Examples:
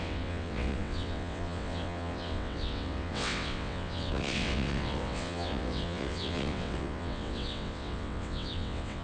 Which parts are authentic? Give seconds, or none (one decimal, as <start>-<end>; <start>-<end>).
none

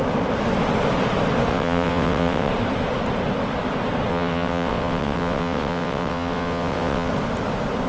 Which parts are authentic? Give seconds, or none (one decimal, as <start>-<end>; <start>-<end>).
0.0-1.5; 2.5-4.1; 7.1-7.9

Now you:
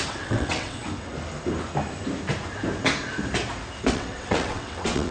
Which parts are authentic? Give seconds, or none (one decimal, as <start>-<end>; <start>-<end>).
0.8-3.9

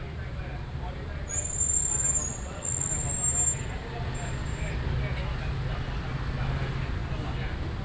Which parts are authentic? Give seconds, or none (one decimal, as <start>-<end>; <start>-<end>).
0.0-2.3; 2.9-7.8